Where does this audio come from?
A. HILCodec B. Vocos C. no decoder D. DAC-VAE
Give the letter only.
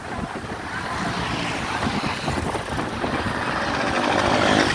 C